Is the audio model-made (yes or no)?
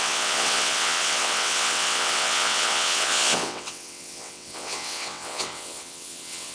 yes